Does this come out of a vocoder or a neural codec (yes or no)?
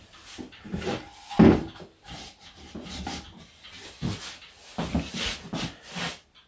no